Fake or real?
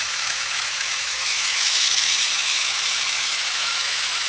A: fake